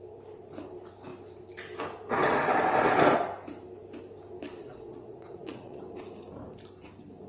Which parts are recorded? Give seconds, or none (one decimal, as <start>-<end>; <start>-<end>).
0.0-4.6; 5.8-7.3